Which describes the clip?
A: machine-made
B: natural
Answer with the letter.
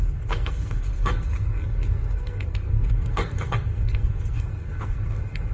A